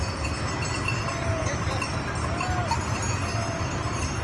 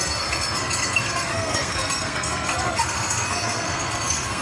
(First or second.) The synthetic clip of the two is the second